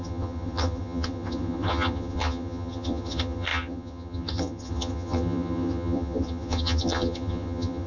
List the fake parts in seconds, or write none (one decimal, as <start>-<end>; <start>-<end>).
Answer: 0.0-7.9